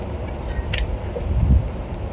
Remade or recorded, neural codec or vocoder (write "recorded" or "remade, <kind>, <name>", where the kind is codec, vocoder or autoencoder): recorded